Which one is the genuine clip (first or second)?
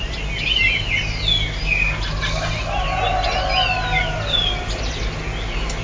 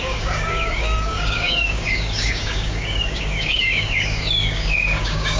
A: first